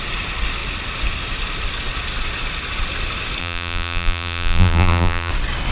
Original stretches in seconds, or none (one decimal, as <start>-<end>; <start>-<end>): 0.0-3.4; 5.3-5.7

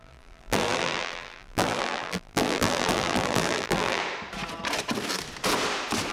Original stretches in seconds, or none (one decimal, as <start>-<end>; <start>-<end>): 4.0-6.1

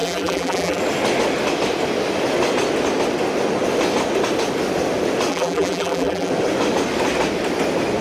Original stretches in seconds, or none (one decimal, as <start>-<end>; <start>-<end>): 0.8-5.3; 6.3-8.0

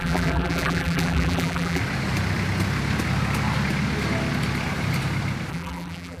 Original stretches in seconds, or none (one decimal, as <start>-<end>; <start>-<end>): 1.8-5.5

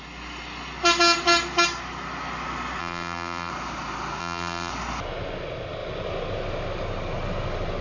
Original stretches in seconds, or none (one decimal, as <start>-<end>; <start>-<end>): 0.0-2.8; 3.5-4.2; 4.7-7.8

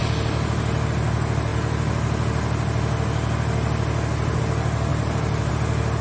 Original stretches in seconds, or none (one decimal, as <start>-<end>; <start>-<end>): 0.0-4.9; 5.5-6.0

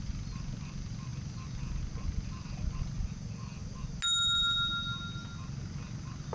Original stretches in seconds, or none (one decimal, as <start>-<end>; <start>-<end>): 0.0-6.3